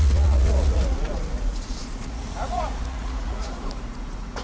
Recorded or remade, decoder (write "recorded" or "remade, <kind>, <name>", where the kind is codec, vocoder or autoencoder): remade, vocoder, Vocos